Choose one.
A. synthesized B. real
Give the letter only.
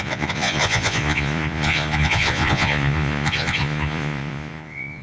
A